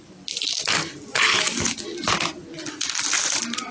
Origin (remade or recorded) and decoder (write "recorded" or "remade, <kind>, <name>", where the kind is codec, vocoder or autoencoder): recorded